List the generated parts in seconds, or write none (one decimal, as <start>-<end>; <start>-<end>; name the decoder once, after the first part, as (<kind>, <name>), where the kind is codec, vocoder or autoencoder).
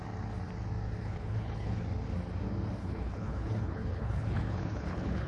1.0-1.8 (codec, HILCodec); 2.8-5.3